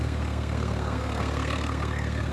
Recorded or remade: remade